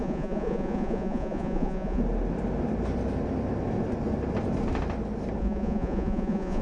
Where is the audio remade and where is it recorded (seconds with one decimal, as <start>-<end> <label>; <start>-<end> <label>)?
0.0-2.0 remade; 2.0-5.4 recorded; 5.4-6.6 remade